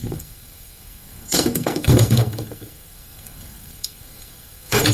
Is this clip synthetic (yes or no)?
yes